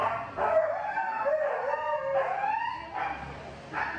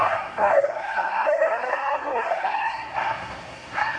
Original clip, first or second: first